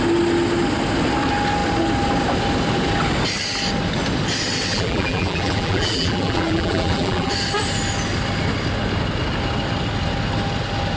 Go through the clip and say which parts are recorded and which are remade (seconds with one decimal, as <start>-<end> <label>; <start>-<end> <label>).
0.0-4.7 recorded; 4.7-7.3 remade; 7.3-11.0 recorded